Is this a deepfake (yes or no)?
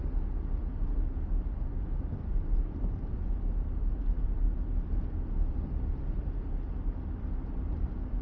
yes